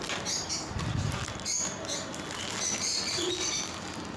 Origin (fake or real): real